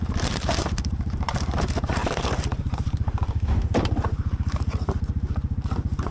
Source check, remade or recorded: remade